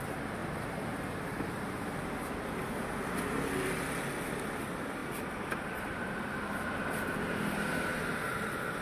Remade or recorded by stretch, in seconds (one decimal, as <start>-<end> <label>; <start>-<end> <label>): 0.0-8.8 recorded

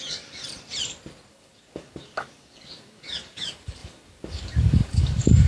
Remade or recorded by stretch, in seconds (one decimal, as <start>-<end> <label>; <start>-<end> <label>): 0.0-0.4 remade; 0.4-1.3 recorded; 1.3-5.5 remade

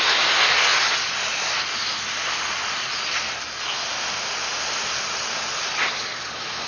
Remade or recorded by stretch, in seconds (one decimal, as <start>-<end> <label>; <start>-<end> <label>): 0.0-6.7 recorded

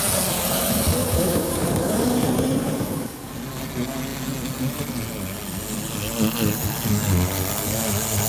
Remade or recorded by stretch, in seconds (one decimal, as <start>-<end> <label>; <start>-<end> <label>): 0.0-1.0 recorded; 1.0-2.2 remade; 2.2-2.6 recorded; 2.6-3.3 remade; 3.3-8.3 recorded

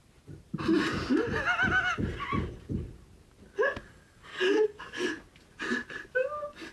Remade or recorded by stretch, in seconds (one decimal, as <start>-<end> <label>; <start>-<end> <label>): 0.0-3.8 recorded; 3.8-5.1 remade; 5.1-6.7 recorded

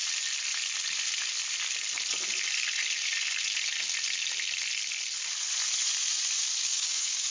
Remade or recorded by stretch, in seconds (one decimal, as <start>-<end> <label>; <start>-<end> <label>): 0.0-6.7 recorded; 6.7-7.3 remade

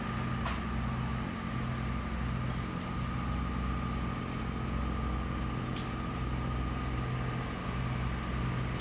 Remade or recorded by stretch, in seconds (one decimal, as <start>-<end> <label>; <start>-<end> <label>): 0.0-8.8 recorded

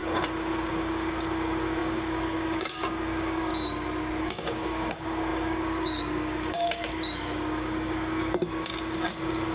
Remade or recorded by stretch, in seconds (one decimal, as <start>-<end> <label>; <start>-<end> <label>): 0.0-3.5 remade; 3.5-4.2 recorded; 4.2-9.5 remade